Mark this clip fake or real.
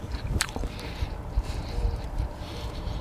fake